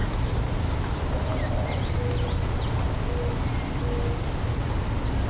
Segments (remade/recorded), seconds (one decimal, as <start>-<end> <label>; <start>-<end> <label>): 0.0-5.3 recorded

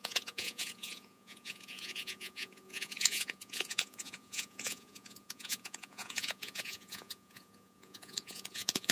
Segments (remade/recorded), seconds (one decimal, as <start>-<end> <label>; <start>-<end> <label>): 0.0-8.9 remade

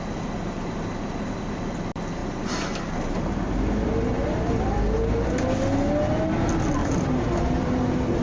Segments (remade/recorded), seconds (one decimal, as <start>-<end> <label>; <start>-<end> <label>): 0.0-2.2 recorded; 2.2-2.7 remade; 2.7-6.8 recorded; 6.8-7.7 remade; 7.7-8.2 recorded

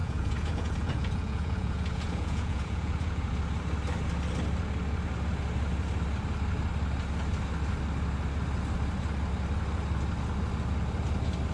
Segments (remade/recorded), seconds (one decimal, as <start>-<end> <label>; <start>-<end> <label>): 0.0-3.3 remade; 3.3-11.5 recorded

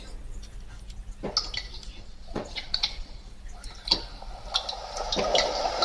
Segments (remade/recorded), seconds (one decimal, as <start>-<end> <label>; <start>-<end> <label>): 0.0-1.9 recorded; 1.9-3.3 remade; 3.3-5.8 recorded